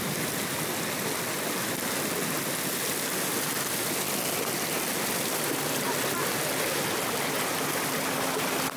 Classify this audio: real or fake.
real